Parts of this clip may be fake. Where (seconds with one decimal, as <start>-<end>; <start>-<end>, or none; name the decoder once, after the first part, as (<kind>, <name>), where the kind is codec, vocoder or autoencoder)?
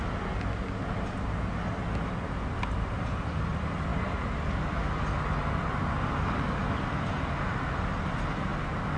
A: none